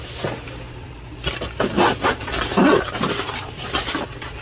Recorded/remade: recorded